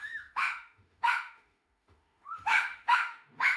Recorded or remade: remade